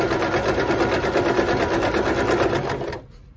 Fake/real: real